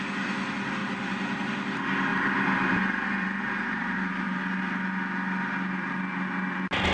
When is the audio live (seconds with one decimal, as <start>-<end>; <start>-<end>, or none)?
0.0-0.8; 1.5-2.1; 4.4-6.9